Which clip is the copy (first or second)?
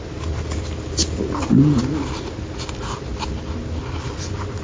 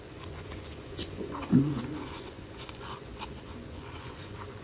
second